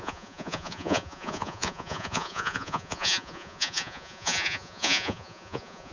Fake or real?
fake